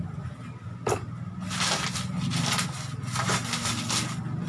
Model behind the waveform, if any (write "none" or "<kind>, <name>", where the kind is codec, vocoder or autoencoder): none